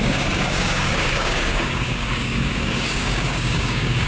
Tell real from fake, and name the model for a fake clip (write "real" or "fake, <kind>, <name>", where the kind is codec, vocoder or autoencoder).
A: fake, codec, DAC